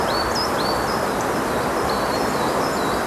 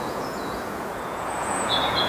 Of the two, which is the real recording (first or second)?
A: first